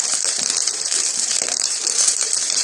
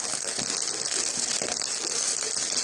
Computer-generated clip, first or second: first